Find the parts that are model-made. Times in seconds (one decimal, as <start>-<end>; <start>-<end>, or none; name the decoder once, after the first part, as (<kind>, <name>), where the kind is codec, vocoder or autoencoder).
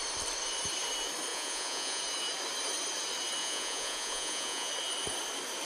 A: 1.3-2.0 (vocoder, Vocos); 3.4-4.7